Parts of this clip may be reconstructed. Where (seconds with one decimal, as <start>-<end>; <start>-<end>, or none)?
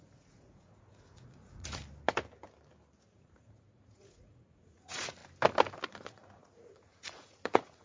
0.0-1.8; 3.1-5.2; 5.9-7.8